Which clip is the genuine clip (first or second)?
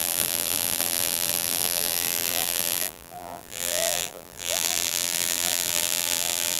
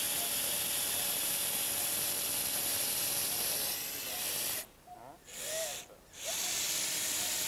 second